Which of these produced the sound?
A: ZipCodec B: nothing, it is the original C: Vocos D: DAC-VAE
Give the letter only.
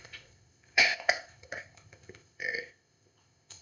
A